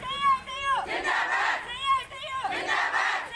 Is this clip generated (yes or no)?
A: no